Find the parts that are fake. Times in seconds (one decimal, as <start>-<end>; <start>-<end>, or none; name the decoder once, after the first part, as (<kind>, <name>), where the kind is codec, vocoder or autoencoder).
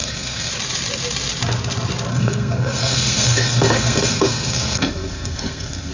0.0-0.5 (codec, SNAC); 2.1-5.9